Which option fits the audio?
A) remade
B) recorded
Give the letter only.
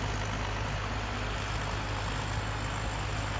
B